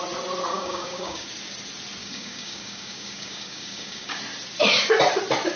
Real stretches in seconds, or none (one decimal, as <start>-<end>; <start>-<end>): 0.0-0.5; 1.3-2.0; 4.2-5.6